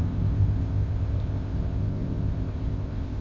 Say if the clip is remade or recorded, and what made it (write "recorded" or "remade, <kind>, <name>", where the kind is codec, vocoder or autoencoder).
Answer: remade, codec, ZipCodec